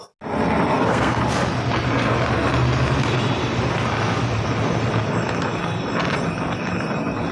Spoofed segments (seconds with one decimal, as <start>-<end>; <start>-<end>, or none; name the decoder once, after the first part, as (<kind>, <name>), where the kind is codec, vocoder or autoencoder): 0.7-1.2 (codec, SNAC)